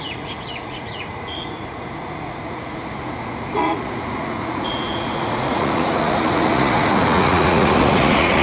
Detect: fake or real fake